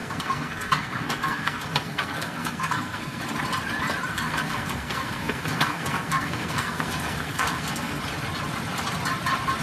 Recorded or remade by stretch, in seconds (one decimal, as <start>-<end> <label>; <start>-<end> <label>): 0.0-3.2 remade; 3.2-4.1 recorded; 4.1-8.0 remade; 8.0-9.6 recorded